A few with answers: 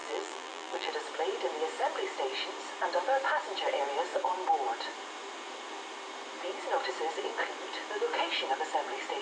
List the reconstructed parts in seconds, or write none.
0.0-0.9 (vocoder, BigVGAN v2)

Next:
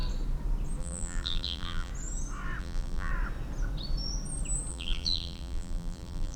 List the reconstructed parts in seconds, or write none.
0.8-1.9 (vocoder, BigVGAN v2); 2.6-3.1; 4.7-6.4